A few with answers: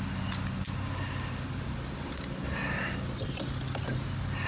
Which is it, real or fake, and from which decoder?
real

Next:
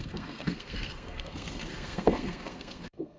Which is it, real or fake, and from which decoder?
fake, codec, SNAC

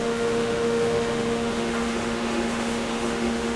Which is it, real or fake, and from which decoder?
fake, autoencoder, DAC-VAE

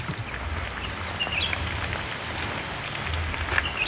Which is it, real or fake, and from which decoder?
real